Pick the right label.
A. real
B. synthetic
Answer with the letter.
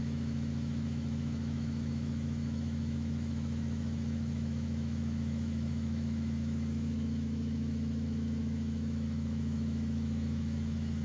B